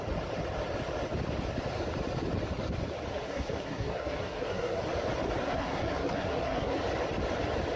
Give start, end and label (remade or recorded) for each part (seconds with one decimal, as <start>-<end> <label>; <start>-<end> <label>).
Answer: 0.0-3.1 recorded; 3.1-4.8 remade; 4.8-5.4 recorded; 5.4-6.8 remade; 6.8-7.8 recorded